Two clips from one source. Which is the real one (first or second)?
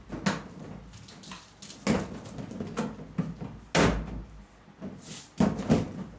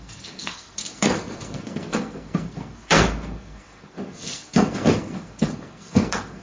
first